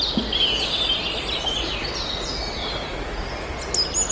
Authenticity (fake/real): real